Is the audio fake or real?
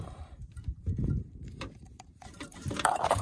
fake